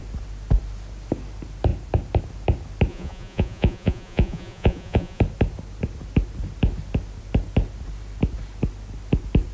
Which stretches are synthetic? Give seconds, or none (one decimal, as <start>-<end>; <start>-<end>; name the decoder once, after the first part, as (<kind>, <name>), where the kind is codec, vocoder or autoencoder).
2.9-5.2 (vocoder, Vocos)